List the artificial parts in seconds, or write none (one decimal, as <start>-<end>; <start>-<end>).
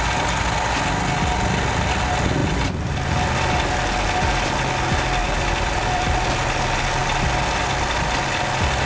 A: 2.4-3.1; 5.2-6.0